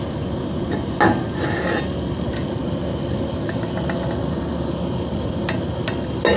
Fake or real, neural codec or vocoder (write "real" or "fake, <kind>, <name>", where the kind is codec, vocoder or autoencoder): real